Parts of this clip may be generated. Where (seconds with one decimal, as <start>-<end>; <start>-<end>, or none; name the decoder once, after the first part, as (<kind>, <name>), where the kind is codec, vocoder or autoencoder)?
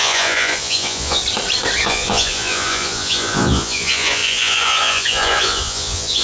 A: 0.0-1.2 (vocoder, Vocos); 1.8-6.2